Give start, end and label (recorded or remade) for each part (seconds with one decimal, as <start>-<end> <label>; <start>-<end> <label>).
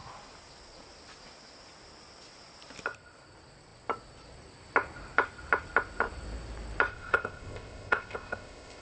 0.0-6.9 recorded; 6.9-8.8 remade